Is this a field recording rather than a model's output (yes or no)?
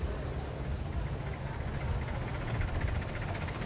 yes